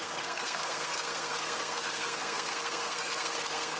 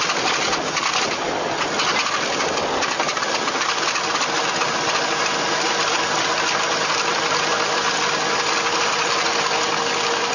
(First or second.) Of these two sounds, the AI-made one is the first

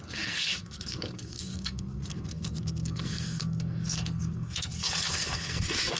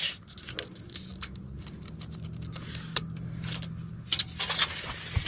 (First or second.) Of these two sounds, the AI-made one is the first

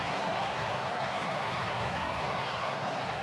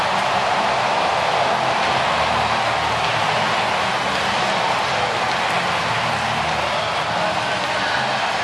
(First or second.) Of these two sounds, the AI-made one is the first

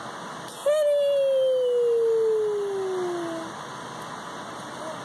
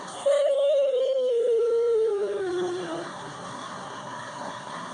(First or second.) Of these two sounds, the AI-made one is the second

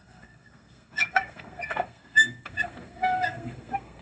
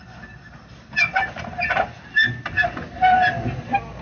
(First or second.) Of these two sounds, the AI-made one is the first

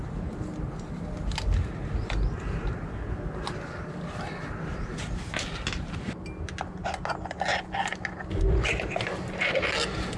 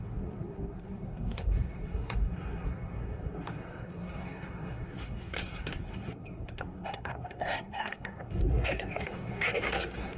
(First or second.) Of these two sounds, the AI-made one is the second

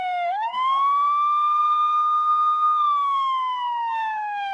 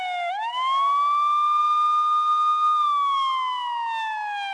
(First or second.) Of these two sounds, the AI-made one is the first